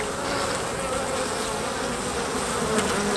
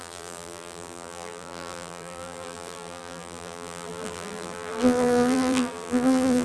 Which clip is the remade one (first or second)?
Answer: second